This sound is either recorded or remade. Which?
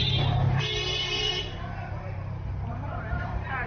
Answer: remade